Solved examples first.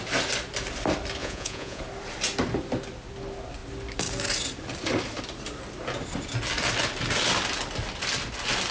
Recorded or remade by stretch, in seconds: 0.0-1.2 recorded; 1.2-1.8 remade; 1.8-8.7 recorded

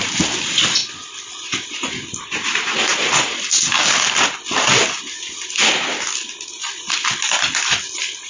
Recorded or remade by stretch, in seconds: 0.0-8.3 recorded

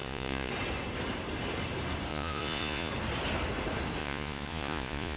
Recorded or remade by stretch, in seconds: 0.0-0.5 remade; 0.5-2.1 recorded; 2.1-2.9 remade; 2.9-4.0 recorded; 4.0-5.2 remade